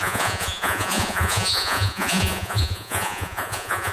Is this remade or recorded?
remade